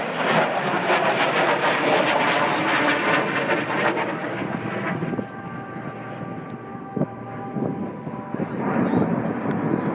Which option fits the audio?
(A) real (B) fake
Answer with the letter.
A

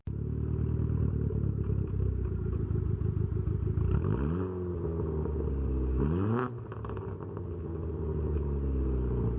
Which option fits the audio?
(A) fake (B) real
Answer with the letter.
B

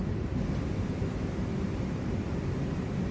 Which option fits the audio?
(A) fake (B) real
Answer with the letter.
B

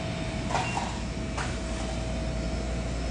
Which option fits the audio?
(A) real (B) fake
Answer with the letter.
A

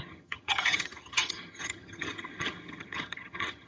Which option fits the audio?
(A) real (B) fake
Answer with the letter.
B